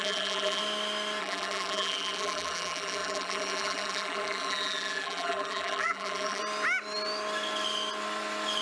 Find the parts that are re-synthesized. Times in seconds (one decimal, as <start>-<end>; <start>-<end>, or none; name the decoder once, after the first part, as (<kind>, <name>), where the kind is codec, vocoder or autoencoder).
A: 0.0-0.6 (vocoder, BigVGAN v2); 1.2-6.4